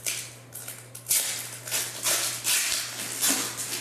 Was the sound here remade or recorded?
recorded